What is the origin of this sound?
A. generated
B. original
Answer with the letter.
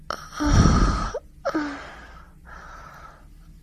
B